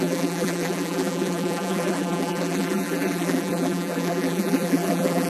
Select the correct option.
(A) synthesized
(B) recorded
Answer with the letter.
A